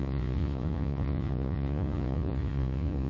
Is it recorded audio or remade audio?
remade